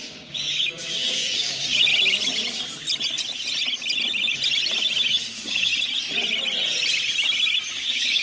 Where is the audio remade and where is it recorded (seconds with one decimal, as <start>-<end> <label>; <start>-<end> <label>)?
0.0-1.9 remade; 1.9-5.2 recorded; 5.2-5.7 remade; 5.7-7.7 recorded; 7.7-8.2 remade